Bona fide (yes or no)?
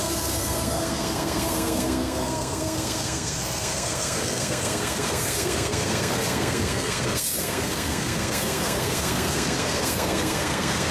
no